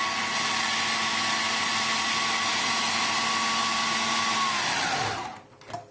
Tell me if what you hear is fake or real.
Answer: real